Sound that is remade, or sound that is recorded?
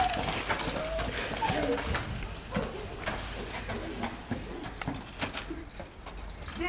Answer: recorded